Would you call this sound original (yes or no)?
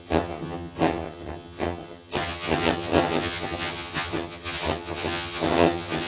no